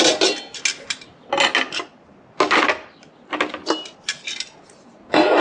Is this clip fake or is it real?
real